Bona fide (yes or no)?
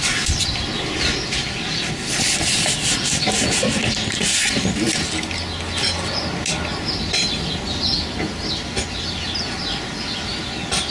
yes